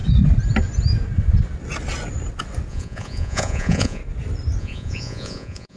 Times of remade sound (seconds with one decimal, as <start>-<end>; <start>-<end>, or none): 2.7-4.0; 4.6-5.8